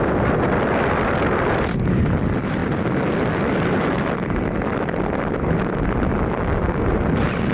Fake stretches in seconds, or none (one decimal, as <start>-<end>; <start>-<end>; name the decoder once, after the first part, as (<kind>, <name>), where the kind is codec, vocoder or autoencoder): none